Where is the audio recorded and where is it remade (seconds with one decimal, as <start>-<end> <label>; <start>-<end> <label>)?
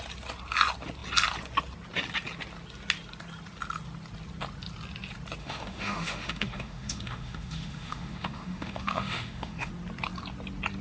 0.0-5.4 recorded; 5.4-9.7 remade; 9.7-10.8 recorded